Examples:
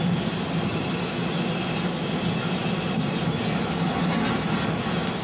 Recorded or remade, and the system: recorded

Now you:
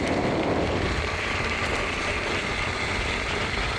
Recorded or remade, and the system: recorded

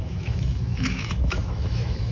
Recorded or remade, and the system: remade, autoencoder, DAC-VAE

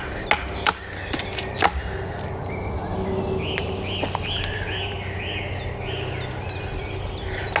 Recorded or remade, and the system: recorded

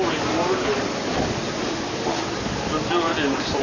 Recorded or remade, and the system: recorded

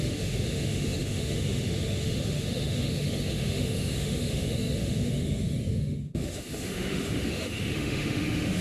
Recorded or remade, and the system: remade, autoencoder, DAC-VAE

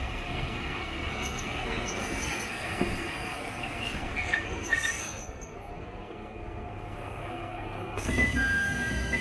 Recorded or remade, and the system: remade, codec, SNAC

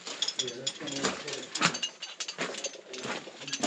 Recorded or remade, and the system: recorded